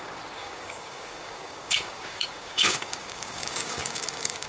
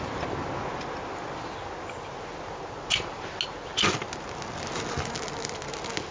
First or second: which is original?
second